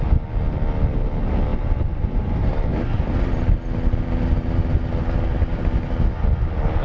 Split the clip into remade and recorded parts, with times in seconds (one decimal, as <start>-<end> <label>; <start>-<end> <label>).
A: 0.0-1.5 recorded; 1.5-3.1 remade; 3.1-6.8 recorded